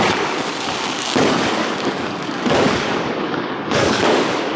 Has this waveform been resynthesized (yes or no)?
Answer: yes